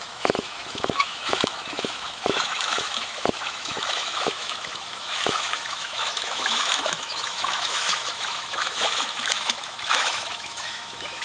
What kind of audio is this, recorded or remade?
remade